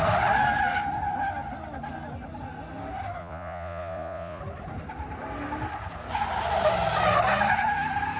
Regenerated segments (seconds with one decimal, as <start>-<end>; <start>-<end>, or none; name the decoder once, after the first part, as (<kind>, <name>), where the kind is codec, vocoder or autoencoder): 3.2-4.4 (vocoder, Vocos)